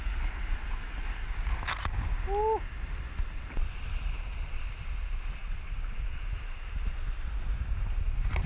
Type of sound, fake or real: real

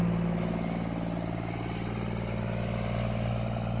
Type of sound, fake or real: real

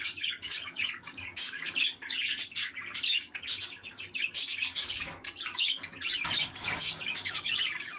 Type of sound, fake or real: fake